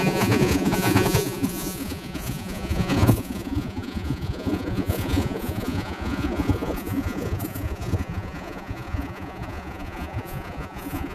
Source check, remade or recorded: remade